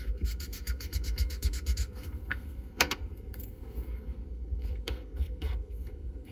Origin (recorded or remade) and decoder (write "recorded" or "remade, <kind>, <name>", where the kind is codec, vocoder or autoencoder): remade, codec, SNAC